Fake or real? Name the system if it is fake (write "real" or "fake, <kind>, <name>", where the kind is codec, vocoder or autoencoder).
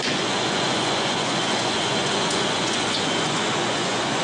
fake, vocoder, Vocos